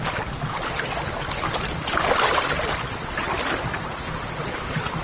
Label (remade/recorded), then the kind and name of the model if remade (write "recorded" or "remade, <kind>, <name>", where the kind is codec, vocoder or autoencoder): recorded